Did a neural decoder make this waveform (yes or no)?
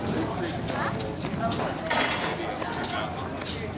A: no